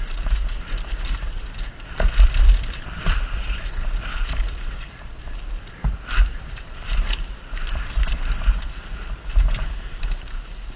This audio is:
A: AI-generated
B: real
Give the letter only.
A